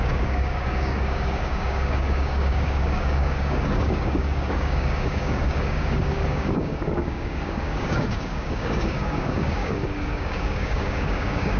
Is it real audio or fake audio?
fake